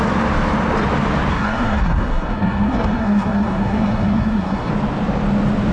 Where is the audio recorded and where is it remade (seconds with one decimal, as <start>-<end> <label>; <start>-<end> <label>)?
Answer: 0.0-1.3 recorded; 1.3-4.7 remade; 4.7-5.7 recorded